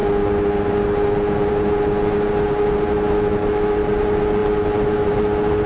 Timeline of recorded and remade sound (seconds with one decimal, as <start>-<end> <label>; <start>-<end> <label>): 0.0-5.7 recorded